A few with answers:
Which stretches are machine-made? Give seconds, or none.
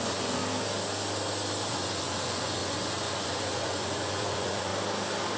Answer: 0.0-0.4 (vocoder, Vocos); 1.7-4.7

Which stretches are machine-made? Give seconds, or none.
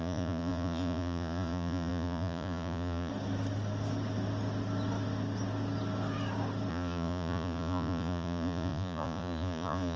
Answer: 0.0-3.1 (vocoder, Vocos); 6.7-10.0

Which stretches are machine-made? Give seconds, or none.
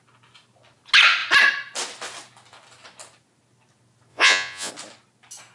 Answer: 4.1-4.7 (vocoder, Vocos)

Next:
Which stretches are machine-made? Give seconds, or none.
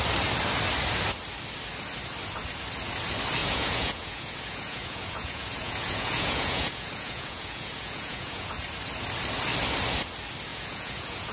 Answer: 3.4-8.5 (vocoder, Vocos); 10.5-11.3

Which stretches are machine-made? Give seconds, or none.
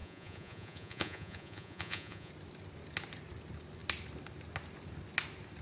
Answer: 0.0-2.3 (vocoder, Vocos)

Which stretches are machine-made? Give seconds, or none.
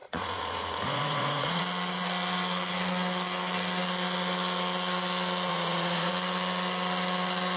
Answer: 0.0-1.6 (vocoder, Vocos); 5.5-6.1